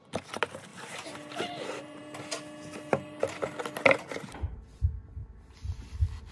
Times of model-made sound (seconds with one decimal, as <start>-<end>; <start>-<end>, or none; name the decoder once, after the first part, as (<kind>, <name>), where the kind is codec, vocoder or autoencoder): 0.7-2.0 (vocoder, BigVGAN v2)